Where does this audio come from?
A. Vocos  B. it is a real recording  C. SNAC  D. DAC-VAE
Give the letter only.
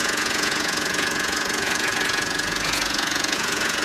A